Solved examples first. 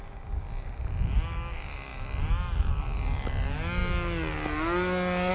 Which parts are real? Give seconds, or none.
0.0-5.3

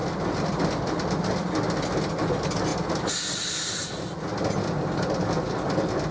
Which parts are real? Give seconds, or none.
0.0-6.1

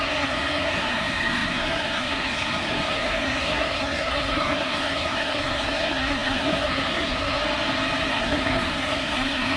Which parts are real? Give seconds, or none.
7.4-8.1